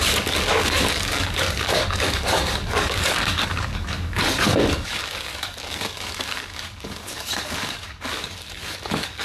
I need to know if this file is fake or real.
fake